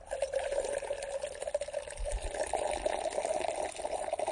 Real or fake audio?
real